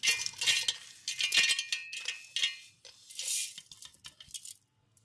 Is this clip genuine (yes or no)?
yes